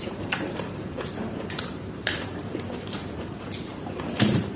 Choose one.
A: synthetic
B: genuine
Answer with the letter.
A